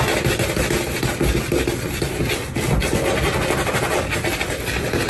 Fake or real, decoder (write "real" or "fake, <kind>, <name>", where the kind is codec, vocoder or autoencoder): real